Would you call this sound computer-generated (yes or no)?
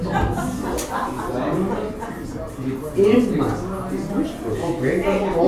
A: no